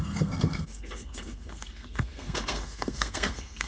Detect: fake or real fake